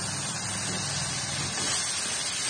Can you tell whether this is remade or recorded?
recorded